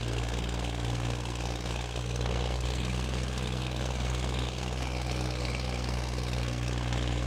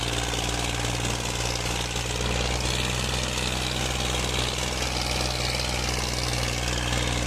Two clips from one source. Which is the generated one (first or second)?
first